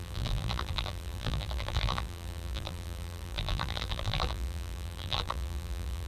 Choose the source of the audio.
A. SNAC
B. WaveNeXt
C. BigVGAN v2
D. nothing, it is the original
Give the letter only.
C